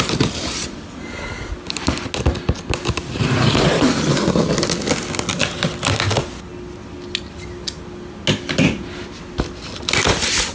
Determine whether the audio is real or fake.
real